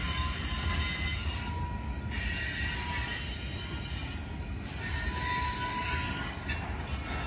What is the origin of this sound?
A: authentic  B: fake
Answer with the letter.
A